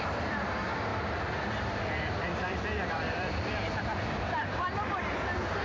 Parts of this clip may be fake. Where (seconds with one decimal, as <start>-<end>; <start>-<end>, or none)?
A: 0.0-0.9; 1.6-3.9; 4.6-5.6